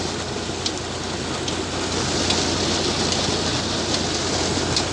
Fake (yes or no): no